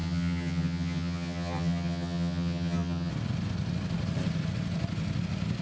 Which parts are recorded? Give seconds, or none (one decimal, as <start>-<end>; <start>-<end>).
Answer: 3.1-5.6